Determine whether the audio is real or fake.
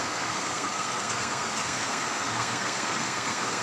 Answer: fake